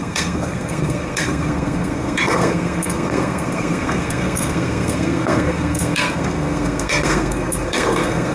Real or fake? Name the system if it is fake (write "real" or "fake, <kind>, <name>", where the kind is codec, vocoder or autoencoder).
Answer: fake, codec, SNAC